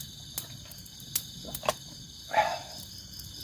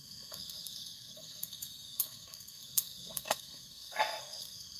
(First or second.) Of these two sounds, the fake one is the second